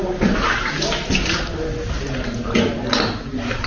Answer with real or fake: real